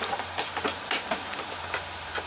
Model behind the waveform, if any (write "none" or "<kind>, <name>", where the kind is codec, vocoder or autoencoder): vocoder, BigVGAN v2